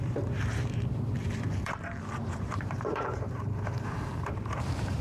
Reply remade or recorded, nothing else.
remade